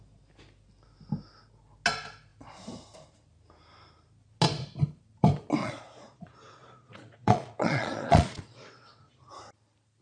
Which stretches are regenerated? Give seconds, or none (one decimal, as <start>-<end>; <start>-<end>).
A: 5.6-9.3